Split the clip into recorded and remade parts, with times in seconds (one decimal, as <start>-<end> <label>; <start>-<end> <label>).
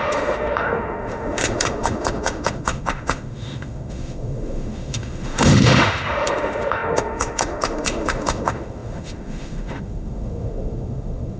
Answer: 0.0-11.4 remade